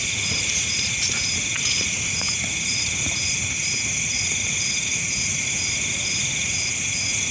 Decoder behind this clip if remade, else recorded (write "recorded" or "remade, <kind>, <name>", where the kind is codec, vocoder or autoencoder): remade, vocoder, Vocos